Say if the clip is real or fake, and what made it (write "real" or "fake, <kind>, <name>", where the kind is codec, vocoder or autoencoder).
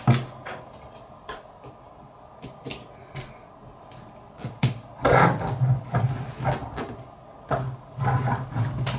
real